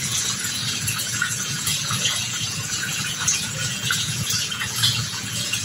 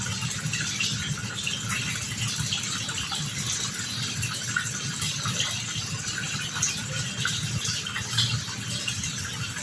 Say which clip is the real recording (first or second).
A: second